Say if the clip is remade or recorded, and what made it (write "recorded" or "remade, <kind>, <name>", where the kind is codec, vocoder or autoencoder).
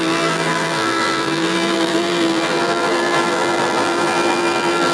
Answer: remade, vocoder, BigVGAN v2